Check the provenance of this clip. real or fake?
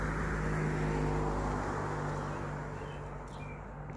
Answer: real